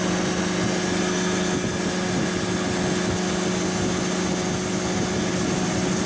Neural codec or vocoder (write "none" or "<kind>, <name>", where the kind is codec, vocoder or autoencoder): none